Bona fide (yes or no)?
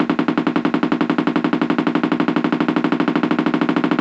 yes